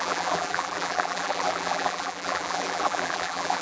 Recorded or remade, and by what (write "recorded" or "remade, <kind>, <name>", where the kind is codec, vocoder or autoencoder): remade, vocoder, BigVGAN v2